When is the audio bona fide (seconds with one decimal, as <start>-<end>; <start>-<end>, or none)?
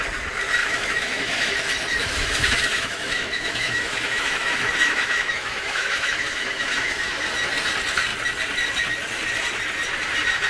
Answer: 0.0-0.6; 1.5-2.0; 7.2-10.5